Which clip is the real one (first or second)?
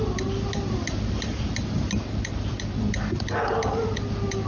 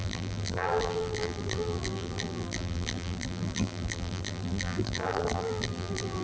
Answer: first